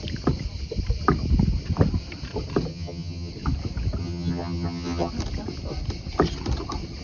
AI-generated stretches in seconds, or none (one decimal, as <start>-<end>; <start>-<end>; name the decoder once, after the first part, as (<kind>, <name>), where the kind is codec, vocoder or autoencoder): 2.7-3.3 (vocoder, HiFi-GAN); 4.0-5.1

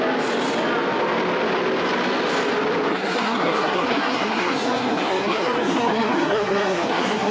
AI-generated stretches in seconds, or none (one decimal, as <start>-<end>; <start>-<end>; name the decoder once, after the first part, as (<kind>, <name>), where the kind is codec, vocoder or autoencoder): 2.9-7.3 (codec, SNAC)